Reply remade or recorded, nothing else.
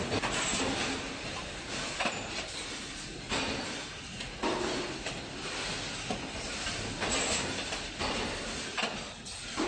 recorded